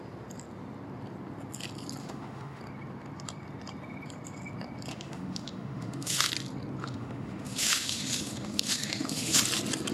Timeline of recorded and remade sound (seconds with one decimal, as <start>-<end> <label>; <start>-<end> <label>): 0.0-2.0 recorded; 2.0-2.6 remade; 2.6-4.9 recorded; 4.9-6.3 remade; 6.3-6.8 recorded; 6.8-9.4 remade; 9.4-9.9 recorded